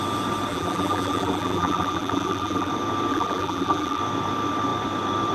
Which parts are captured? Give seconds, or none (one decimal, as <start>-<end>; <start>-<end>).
0.0-0.5; 2.7-3.1; 4.0-5.3

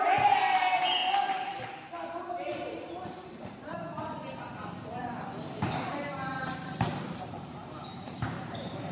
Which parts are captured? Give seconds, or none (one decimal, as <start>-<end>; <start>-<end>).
1.0-2.3

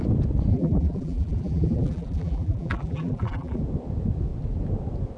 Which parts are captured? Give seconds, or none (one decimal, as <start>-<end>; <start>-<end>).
0.0-0.5; 3.6-5.2